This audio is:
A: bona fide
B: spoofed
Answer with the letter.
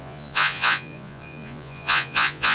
B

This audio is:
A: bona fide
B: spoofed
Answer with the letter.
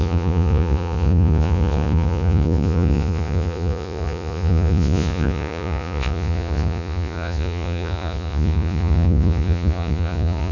B